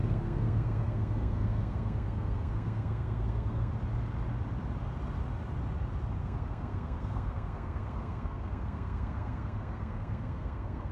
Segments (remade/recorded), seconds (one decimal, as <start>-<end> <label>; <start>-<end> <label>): 0.0-3.7 remade; 3.7-6.2 recorded; 6.2-10.9 remade